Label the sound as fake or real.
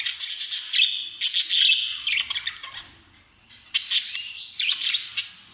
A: real